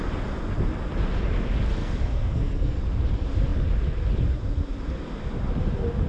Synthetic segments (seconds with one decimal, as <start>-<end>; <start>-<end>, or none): 1.8-2.8